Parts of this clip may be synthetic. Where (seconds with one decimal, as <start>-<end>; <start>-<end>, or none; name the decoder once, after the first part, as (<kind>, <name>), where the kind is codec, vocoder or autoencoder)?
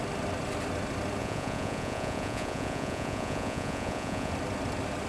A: 1.2-4.3 (vocoder, Vocos)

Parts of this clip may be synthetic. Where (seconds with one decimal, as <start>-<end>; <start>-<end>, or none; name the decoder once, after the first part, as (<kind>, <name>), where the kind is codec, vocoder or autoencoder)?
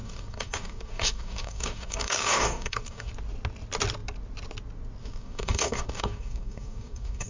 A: 0.0-3.1 (codec, DAC); 5.0-7.3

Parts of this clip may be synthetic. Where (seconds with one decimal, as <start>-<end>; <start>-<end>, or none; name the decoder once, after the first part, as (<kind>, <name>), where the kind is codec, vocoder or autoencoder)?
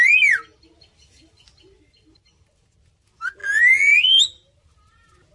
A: 3.4-4.2 (vocoder, BigVGAN v2)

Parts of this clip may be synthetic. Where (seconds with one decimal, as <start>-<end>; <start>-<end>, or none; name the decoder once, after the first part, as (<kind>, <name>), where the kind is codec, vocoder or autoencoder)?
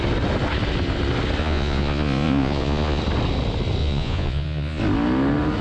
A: 1.4-3.0 (vocoder, Vocos); 3.8-4.8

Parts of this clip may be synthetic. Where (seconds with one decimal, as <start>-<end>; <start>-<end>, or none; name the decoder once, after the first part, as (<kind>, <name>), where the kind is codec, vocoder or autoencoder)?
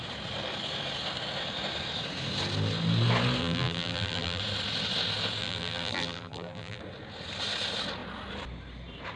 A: 3.4-4.4 (vocoder, BigVGAN v2); 5.4-6.8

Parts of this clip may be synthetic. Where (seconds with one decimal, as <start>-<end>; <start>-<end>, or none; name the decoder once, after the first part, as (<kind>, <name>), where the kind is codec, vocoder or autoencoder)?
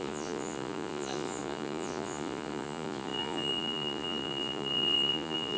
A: 0.0-5.6 (vocoder, Vocos)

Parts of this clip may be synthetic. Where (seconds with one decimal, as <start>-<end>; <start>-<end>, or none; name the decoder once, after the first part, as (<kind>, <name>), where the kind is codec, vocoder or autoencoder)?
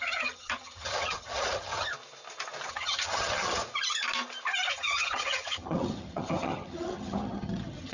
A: 0.0-1.9 (vocoder, HiFi-GAN); 2.7-3.6; 4.7-7.9